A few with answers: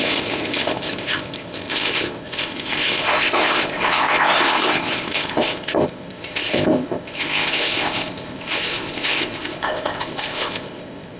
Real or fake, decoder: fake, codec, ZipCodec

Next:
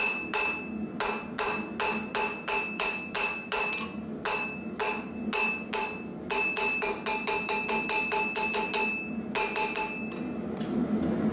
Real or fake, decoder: real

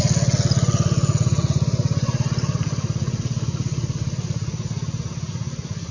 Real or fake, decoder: real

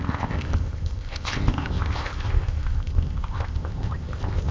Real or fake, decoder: fake, codec, ZipCodec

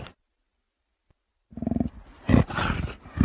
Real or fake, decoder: real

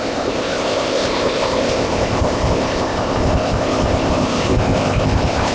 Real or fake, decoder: fake, codec, ZipCodec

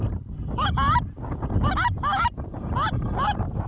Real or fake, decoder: real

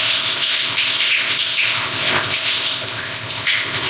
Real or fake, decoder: fake, codec, ZipCodec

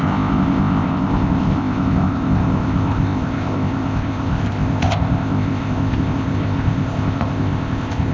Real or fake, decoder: fake, codec, ZipCodec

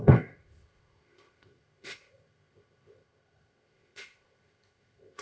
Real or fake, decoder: fake, codec, ZipCodec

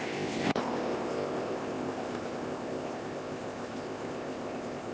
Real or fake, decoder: fake, codec, ZipCodec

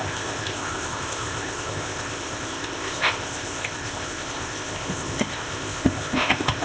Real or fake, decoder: fake, codec, ZipCodec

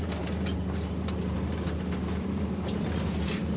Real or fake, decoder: real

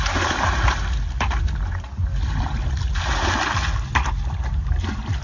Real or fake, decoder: real